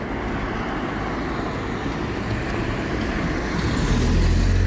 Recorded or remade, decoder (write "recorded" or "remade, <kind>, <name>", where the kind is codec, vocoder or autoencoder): recorded